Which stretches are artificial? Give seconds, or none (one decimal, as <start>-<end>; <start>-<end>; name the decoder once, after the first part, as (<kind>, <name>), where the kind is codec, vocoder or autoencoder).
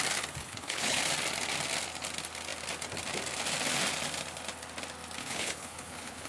0.4-1.0 (codec, HILCodec); 5.2-6.3